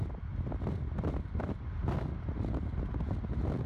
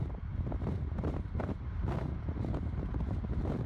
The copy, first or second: second